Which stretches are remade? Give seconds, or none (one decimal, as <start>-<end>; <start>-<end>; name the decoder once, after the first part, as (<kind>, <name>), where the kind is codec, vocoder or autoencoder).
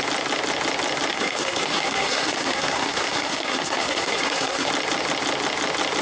1.1-4.7 (codec, SNAC)